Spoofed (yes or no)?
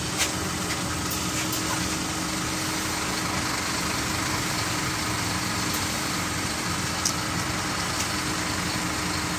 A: no